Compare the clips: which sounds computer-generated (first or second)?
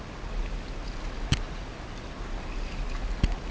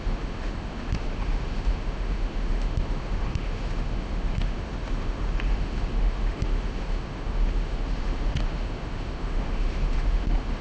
second